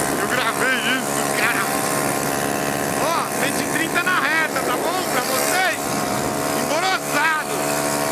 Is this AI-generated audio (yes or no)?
no